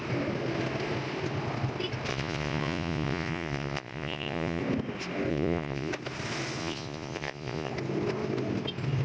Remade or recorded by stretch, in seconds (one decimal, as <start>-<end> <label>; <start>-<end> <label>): 0.0-2.1 recorded; 2.1-4.6 remade; 4.6-5.3 recorded; 5.3-5.9 remade; 5.9-6.6 recorded; 6.6-7.7 remade; 7.7-9.0 recorded